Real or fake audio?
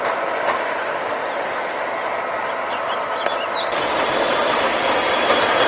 real